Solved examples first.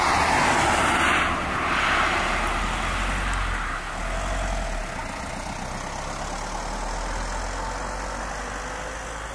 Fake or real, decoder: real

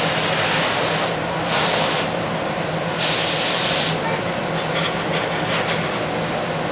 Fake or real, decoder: real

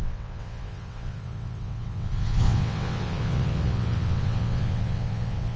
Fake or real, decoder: fake, vocoder, WaveNeXt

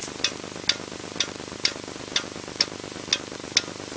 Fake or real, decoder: real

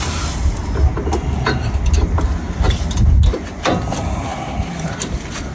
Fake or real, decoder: real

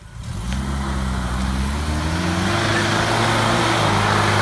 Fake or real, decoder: real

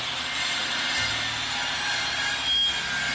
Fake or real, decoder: real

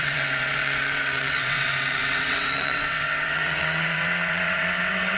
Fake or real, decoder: fake, vocoder, WaveNeXt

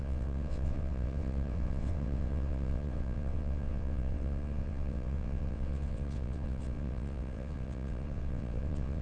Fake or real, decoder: fake, vocoder, WaveNeXt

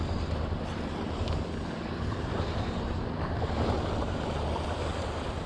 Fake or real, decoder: real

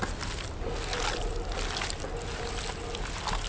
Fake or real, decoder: real